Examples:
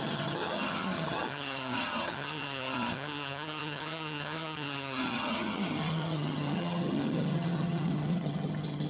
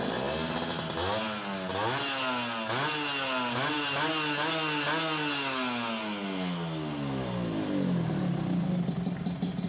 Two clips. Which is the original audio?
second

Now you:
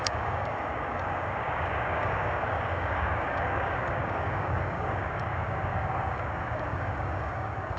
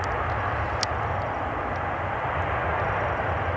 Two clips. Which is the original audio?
second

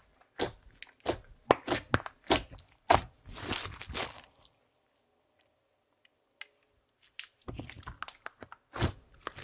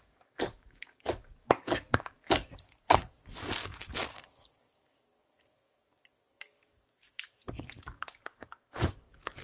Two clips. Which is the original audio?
first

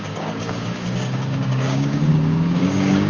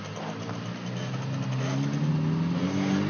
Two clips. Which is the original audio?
second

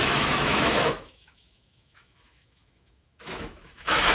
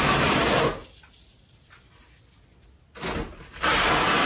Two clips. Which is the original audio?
second